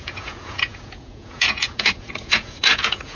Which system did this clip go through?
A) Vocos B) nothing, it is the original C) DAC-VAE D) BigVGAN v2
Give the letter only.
A